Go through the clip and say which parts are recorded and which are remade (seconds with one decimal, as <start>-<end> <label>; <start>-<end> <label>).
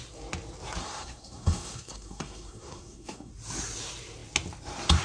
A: 0.0-0.8 recorded; 0.8-3.3 remade; 3.3-5.0 recorded